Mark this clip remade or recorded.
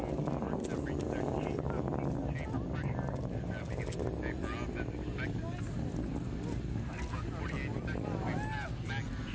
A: recorded